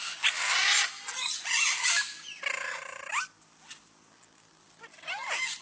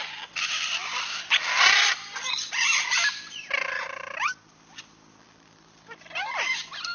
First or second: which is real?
first